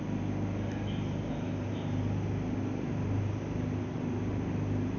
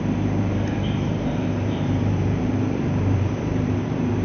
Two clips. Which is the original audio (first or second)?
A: first